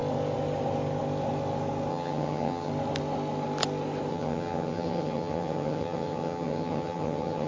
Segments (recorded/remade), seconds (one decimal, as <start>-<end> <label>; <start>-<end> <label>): 0.0-1.9 recorded; 1.9-2.7 remade; 2.7-4.1 recorded; 4.1-7.5 remade